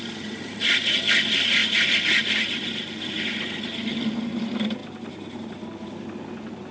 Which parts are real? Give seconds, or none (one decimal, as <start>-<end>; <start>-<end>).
1.6-4.1; 4.8-6.7